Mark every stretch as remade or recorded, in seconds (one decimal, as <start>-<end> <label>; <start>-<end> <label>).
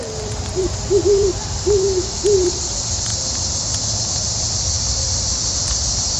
0.0-3.1 remade; 3.1-4.0 recorded; 4.0-6.2 remade